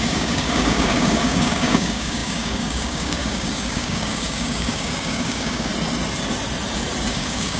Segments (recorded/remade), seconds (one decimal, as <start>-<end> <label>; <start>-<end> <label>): 0.0-5.7 remade; 5.7-7.1 recorded; 7.1-7.6 remade